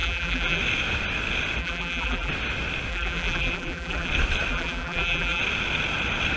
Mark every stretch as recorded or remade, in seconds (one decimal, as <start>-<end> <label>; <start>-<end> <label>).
0.0-0.6 remade; 0.6-1.6 recorded; 1.6-2.3 remade; 2.3-2.9 recorded; 2.9-4.1 remade; 4.1-4.5 recorded; 4.5-5.4 remade; 5.4-6.4 recorded